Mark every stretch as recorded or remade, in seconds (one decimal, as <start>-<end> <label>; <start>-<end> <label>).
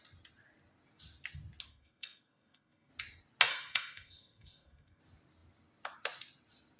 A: 0.0-1.7 recorded; 1.7-2.9 remade; 2.9-3.5 recorded; 3.5-5.0 remade; 5.0-6.8 recorded